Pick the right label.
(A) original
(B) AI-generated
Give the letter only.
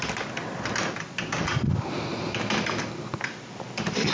A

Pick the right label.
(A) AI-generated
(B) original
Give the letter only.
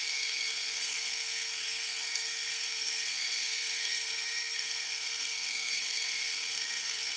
A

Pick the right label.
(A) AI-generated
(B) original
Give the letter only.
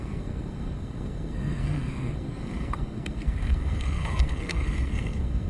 A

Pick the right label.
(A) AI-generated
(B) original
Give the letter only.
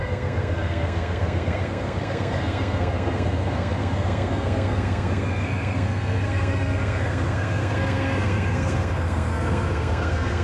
A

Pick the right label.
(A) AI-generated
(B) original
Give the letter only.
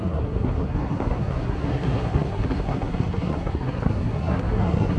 A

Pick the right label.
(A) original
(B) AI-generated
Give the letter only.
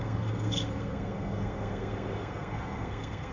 B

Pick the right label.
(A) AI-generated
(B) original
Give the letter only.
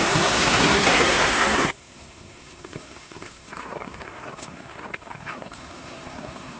A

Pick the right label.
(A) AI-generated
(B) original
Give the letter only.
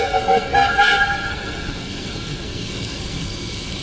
A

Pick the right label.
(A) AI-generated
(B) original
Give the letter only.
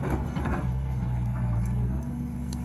A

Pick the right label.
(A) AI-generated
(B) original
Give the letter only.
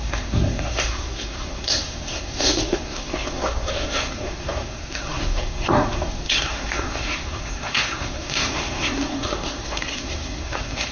A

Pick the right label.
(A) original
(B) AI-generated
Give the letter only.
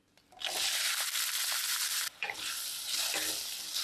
A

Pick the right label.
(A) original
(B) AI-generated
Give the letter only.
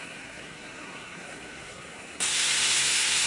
B